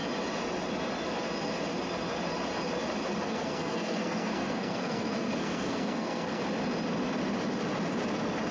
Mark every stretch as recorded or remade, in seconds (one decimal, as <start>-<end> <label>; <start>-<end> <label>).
0.0-3.2 recorded; 3.2-6.4 remade; 6.4-8.5 recorded